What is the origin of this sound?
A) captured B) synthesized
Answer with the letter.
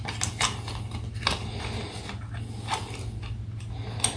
A